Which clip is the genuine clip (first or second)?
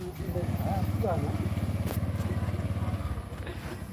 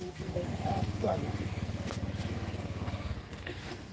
first